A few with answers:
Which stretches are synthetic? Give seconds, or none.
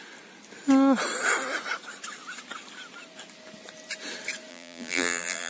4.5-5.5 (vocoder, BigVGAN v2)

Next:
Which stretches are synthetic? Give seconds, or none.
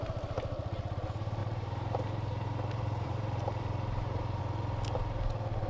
1.4-4.4 (vocoder, BigVGAN v2)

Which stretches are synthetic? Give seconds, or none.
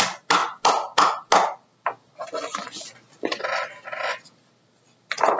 none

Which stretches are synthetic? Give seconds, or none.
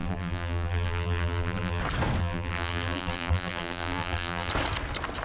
0.0-1.8 (vocoder, BigVGAN v2); 2.2-4.5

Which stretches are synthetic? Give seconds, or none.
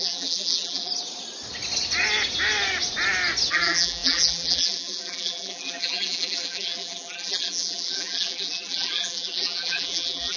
0.0-0.9 (vocoder, BigVGAN v2); 3.5-10.4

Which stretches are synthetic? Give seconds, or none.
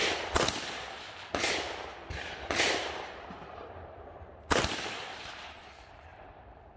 0.7-1.3 (vocoder, BigVGAN v2); 2.8-6.8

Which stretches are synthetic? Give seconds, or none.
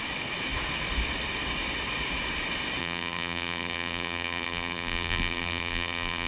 2.8-6.3 (vocoder, BigVGAN v2)